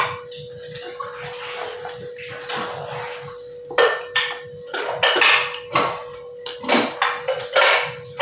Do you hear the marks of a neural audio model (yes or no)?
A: no